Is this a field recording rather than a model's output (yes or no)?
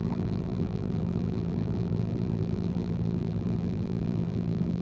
no